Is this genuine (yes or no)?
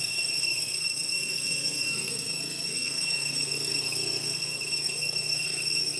no